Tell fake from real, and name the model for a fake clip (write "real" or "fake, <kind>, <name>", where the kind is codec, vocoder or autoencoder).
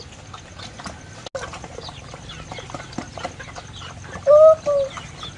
real